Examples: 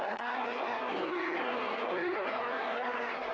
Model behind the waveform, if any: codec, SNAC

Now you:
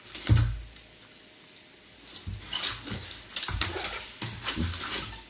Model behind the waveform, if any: none